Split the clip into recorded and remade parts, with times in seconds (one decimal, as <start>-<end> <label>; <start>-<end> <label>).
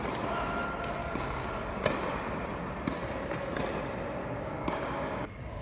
0.0-1.0 recorded; 1.0-1.8 remade; 1.8-4.2 recorded; 4.2-5.6 remade